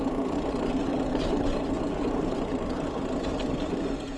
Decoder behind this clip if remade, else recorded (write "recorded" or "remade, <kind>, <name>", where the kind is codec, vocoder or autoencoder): recorded